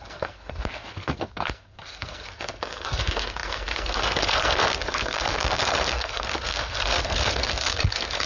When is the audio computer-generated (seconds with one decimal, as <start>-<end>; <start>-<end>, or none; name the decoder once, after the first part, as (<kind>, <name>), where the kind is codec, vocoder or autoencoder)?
0.0-8.3 (codec, SNAC)